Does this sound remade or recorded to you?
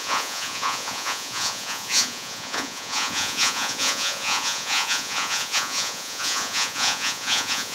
remade